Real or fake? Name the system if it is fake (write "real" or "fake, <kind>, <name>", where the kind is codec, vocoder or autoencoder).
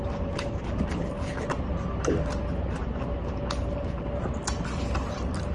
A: real